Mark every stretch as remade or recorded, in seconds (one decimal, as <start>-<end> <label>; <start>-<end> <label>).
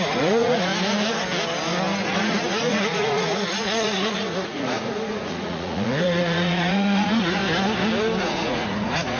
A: 0.0-0.7 remade; 0.7-2.0 recorded; 2.0-7.4 remade; 7.4-8.2 recorded; 8.2-9.2 remade